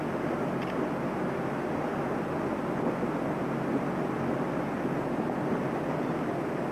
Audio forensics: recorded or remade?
recorded